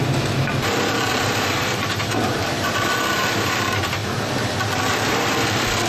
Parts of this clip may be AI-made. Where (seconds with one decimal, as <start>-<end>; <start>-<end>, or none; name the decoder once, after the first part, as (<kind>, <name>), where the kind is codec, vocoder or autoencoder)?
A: 0.0-0.5 (vocoder, BigVGAN v2); 1.1-2.7